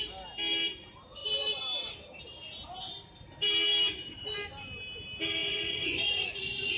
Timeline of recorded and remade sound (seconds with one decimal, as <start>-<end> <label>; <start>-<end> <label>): 0.0-5.4 recorded; 5.4-6.8 remade